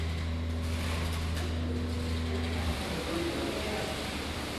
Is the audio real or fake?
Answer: real